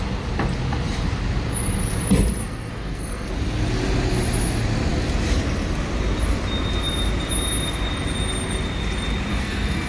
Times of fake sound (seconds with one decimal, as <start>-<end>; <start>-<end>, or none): 2.4-3.3; 9.3-9.9